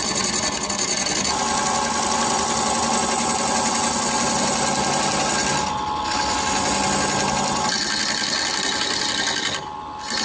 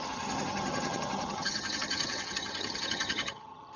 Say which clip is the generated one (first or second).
second